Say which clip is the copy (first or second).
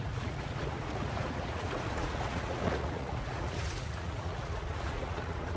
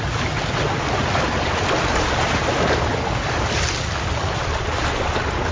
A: first